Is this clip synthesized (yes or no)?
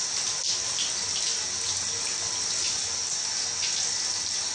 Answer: no